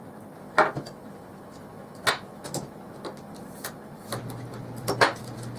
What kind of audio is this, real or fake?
real